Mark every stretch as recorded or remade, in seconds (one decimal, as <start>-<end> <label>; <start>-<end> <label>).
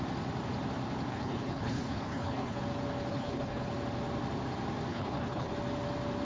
0.0-1.1 recorded; 1.1-2.6 remade; 2.6-3.1 recorded; 3.1-3.7 remade; 3.7-4.9 recorded; 4.9-5.5 remade; 5.5-6.2 recorded